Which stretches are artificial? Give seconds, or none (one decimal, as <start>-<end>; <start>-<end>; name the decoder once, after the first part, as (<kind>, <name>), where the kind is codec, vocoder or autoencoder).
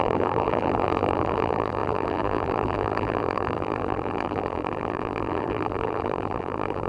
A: 0.0-6.9 (vocoder, BigVGAN v2)